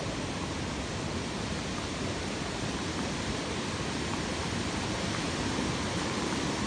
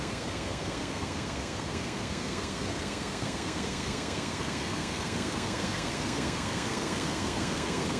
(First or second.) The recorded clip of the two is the first